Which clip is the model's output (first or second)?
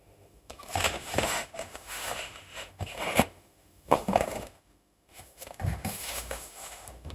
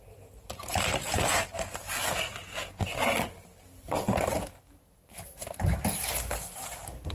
first